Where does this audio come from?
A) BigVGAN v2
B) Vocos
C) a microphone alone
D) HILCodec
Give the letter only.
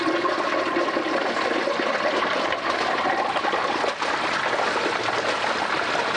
C